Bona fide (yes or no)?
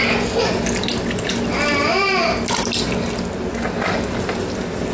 yes